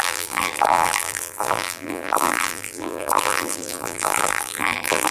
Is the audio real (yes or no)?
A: no